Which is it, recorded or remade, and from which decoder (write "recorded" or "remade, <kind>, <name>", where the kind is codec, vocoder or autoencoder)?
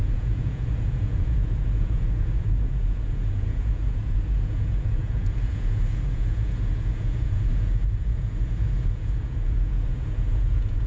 remade, vocoder, Vocos